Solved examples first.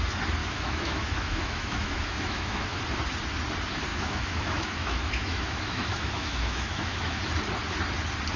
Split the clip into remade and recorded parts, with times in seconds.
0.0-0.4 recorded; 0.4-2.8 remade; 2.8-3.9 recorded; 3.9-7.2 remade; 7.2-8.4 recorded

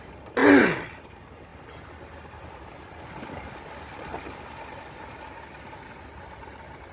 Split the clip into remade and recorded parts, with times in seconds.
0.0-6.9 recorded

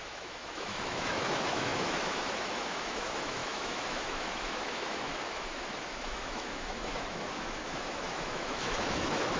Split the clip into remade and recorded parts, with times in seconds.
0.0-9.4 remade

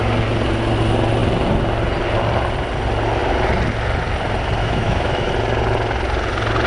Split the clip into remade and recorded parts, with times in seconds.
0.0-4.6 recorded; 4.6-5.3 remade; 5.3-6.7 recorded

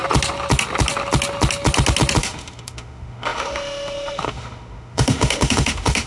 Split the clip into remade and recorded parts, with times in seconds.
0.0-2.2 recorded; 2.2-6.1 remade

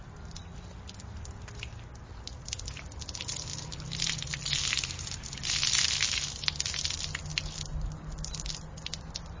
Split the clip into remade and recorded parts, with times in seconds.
0.0-9.4 recorded